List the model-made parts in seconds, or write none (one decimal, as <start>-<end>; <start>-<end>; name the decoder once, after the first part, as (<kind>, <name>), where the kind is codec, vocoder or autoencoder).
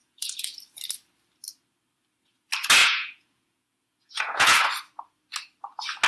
0.0-0.6 (vocoder, Vocos); 2.8-4.6